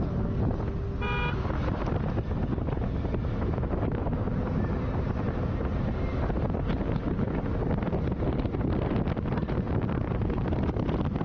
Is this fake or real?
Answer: real